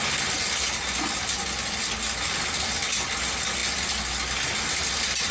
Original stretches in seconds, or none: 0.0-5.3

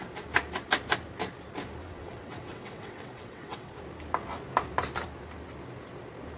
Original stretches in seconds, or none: 0.0-1.8; 3.7-6.4

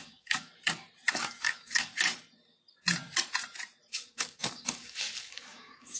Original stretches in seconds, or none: 0.5-1.1; 1.9-3.9